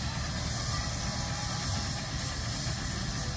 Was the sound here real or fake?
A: real